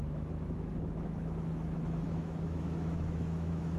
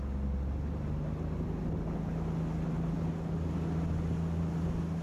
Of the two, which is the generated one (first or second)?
first